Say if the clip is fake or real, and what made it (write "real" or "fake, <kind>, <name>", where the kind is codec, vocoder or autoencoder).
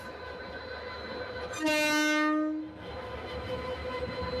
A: real